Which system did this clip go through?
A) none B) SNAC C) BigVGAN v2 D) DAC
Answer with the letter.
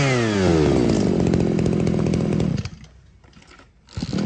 A